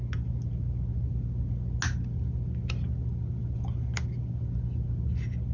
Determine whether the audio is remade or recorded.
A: recorded